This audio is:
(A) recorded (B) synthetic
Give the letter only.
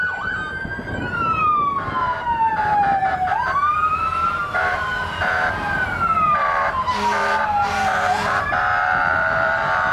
B